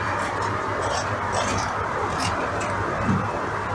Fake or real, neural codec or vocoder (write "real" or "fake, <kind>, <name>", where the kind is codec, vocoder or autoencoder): fake, vocoder, BigVGAN v2